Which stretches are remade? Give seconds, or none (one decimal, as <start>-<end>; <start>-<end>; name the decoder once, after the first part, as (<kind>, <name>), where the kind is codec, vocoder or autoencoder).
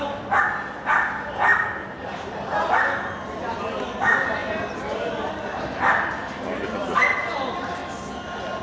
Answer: 0.0-1.5 (vocoder, BigVGAN v2); 3.6-7.8